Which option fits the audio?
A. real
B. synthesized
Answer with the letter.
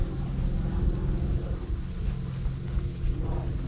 A